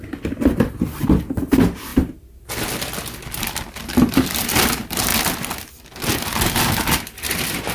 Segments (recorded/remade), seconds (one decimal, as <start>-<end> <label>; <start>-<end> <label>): 0.0-7.7 recorded